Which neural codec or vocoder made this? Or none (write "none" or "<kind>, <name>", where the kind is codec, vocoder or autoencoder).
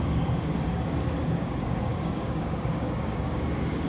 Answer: codec, DAC